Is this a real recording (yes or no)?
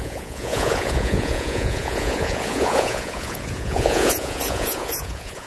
no